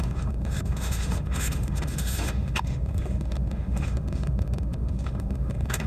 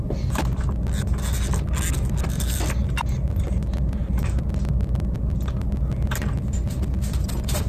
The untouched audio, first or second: second